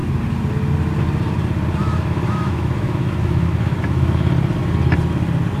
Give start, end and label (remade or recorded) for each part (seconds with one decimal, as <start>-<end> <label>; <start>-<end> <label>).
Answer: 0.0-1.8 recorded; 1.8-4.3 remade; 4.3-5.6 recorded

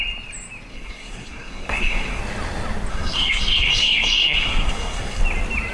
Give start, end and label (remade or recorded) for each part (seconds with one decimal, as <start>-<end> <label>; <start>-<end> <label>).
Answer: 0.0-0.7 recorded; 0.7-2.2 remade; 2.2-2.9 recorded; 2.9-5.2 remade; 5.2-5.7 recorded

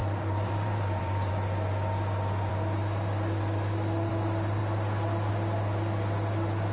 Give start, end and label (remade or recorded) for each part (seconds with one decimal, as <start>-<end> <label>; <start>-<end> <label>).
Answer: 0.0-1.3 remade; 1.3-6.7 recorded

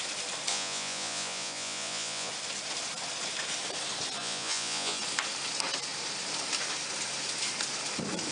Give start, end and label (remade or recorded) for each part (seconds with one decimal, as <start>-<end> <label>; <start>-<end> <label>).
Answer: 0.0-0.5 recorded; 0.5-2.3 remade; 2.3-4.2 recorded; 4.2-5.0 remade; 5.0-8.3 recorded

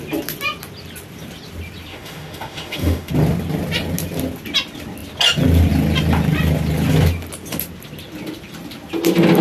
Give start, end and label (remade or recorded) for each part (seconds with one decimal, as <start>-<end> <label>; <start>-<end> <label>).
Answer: 0.0-1.9 recorded; 1.9-3.1 remade; 3.1-9.4 recorded

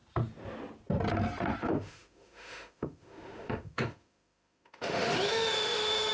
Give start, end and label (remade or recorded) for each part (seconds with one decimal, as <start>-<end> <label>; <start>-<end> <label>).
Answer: 0.0-1.6 recorded; 1.6-6.1 remade

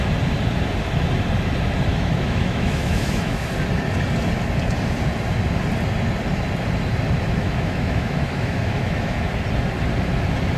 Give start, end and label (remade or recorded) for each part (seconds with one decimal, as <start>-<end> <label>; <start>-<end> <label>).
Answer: 0.0-1.9 recorded; 1.9-3.5 remade; 3.5-7.4 recorded; 7.4-9.3 remade; 9.3-10.6 recorded

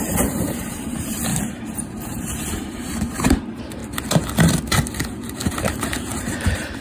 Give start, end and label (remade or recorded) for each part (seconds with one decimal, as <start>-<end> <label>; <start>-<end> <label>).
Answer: 0.0-1.3 remade; 1.3-1.8 recorded; 1.8-3.8 remade; 3.8-5.0 recorded; 5.0-6.8 remade